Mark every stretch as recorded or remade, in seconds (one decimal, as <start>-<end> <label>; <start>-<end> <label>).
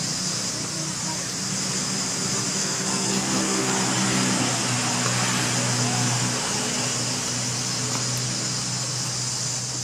0.0-2.6 recorded; 2.6-3.7 remade; 3.7-9.8 recorded